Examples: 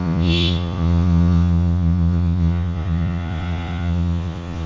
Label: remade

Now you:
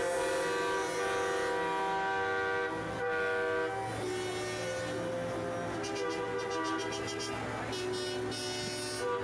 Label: recorded